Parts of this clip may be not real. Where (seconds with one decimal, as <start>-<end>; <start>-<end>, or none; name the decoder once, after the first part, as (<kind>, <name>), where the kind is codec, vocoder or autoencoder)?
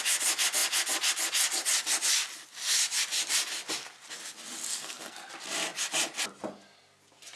4.7-5.3 (codec, SNAC)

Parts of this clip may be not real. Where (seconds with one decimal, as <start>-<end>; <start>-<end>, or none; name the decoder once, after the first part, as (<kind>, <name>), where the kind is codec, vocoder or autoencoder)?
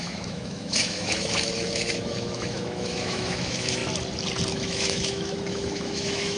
0.0-3.8 (autoencoder, DAC-VAE); 4.5-6.4